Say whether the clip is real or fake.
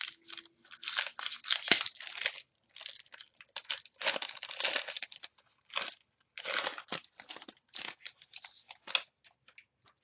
real